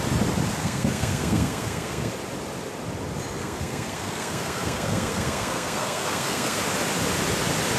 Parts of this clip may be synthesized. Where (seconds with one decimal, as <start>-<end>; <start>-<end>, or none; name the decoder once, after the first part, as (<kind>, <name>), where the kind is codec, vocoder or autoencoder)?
0.6-2.1 (codec, SNAC); 3.4-6.6